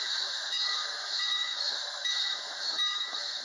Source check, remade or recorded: remade